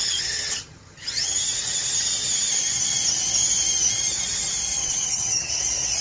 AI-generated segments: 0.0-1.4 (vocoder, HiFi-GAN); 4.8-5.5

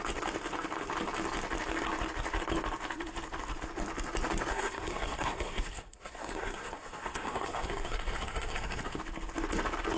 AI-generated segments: 4.5-9.0 (codec, SNAC)

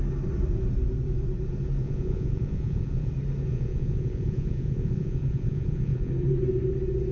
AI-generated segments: 1.8-3.1 (vocoder, Vocos); 3.5-6.1

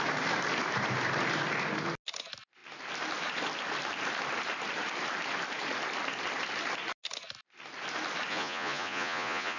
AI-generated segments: 8.3-9.6 (vocoder, Vocos)

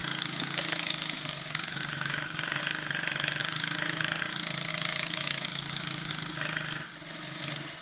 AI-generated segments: 0.0-2.6 (codec, DAC); 3.4-4.2; 4.7-6.1

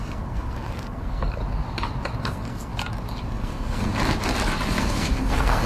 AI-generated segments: 0.0-1.4 (codec, SNAC); 2.2-2.7; 3.3-3.9; 4.8-5.7

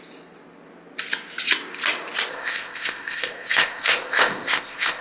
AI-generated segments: 2.3-5.0 (codec, ZipCodec)